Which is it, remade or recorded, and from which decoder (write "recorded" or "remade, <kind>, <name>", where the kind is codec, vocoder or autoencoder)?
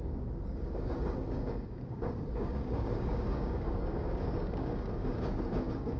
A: remade, codec, DAC